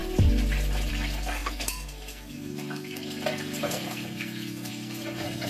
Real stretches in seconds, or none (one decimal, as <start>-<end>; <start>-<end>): 0.0-0.9